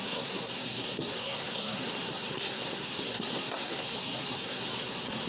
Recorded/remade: remade